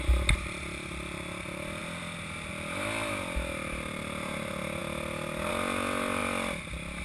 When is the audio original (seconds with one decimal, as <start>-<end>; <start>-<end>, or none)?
0.0-7.0